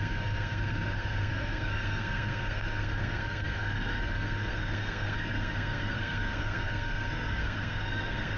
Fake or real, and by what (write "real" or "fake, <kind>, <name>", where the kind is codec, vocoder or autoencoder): fake, codec, SNAC